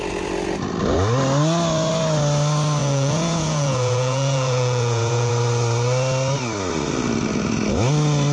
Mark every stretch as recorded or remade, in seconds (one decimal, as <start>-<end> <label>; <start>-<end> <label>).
0.0-2.8 recorded; 2.8-5.3 remade; 5.3-8.3 recorded